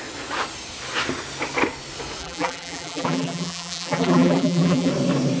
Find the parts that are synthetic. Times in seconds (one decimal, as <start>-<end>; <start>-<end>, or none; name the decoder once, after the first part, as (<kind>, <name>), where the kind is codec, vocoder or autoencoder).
2.2-4.9 (vocoder, BigVGAN v2)